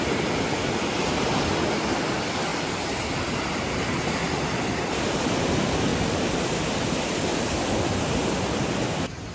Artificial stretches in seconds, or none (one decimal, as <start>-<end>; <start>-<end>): 2.5-4.7